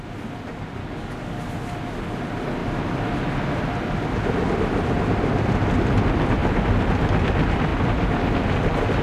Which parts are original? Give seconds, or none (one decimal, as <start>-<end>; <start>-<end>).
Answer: 0.0-0.8; 1.4-9.0